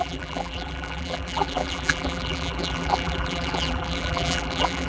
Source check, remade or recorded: remade